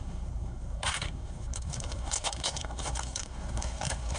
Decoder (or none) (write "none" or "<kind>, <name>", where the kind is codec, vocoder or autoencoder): codec, SNAC